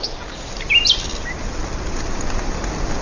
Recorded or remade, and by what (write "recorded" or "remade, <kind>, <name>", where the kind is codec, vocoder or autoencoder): recorded